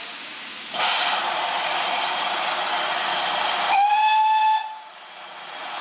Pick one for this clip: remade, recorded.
recorded